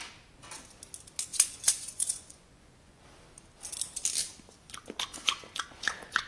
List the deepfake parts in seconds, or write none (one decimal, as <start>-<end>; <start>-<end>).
1.3-3.0; 5.1-6.3